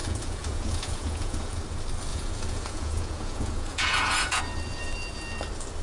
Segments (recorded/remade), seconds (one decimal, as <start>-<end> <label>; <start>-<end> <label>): 0.0-1.6 remade; 1.6-2.1 recorded; 2.1-4.4 remade; 4.4-5.8 recorded